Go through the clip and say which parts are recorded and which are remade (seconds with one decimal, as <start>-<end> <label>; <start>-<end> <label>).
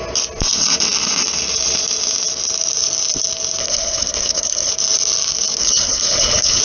0.0-3.6 recorded; 3.6-4.7 remade; 4.7-5.6 recorded; 5.6-6.6 remade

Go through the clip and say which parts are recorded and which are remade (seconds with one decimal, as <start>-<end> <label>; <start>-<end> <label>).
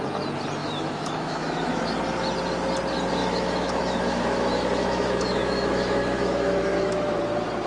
0.0-0.6 recorded; 0.6-1.8 remade; 1.8-3.2 recorded; 3.2-7.2 remade; 7.2-7.7 recorded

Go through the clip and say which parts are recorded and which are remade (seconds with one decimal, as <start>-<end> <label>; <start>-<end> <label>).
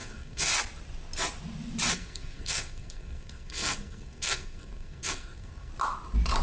0.0-0.5 remade; 0.5-1.9 recorded; 1.9-5.7 remade; 5.7-6.4 recorded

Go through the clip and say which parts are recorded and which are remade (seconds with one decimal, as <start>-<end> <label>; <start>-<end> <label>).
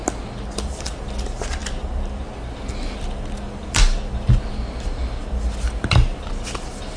0.0-7.0 recorded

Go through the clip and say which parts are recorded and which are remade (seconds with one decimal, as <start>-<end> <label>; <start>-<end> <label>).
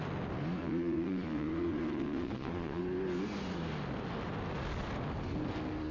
0.0-0.6 recorded; 0.6-2.8 remade; 2.8-5.9 recorded